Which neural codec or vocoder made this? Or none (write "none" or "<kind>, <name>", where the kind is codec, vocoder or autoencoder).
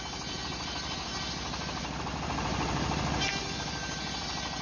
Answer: none